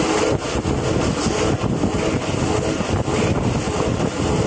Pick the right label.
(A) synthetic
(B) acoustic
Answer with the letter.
B